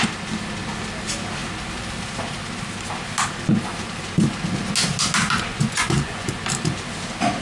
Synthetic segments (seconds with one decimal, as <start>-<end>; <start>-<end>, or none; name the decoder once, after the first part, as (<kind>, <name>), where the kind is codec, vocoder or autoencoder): 5.5-6.5 (vocoder, Vocos)